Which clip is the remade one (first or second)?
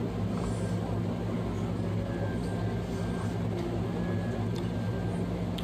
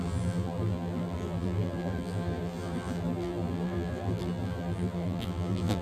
second